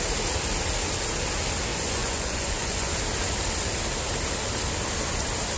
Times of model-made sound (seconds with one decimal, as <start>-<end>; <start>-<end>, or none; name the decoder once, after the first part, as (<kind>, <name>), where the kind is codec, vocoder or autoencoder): 1.7-2.9 (vocoder, Vocos)